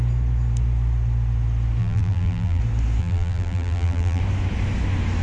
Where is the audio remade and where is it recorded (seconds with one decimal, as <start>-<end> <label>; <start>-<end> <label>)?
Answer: 0.0-1.8 recorded; 1.8-2.6 remade; 2.6-3.0 recorded; 3.0-4.2 remade; 4.2-5.2 recorded